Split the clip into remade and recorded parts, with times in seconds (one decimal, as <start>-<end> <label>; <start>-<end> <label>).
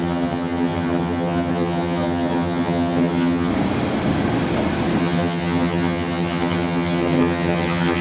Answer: 0.0-3.5 remade; 3.5-5.0 recorded; 5.0-8.0 remade